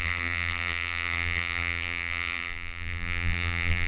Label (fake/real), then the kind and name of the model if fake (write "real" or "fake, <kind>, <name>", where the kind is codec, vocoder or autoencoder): fake, vocoder, BigVGAN v2